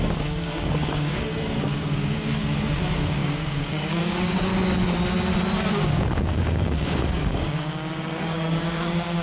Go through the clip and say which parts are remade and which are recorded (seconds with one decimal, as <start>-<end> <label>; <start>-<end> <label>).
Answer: 0.0-4.5 remade; 4.5-5.7 recorded; 5.7-9.2 remade